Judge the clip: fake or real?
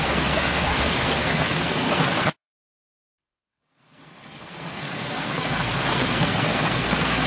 fake